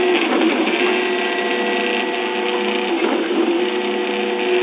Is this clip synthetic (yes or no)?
no